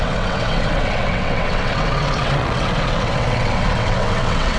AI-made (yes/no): yes